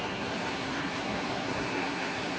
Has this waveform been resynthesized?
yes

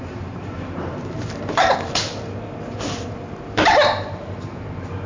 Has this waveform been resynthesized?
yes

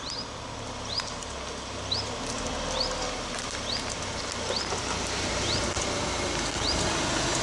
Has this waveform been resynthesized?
no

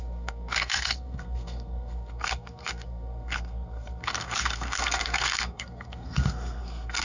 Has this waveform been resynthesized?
yes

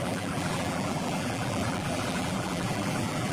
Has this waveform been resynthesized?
yes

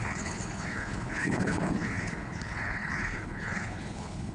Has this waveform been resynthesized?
yes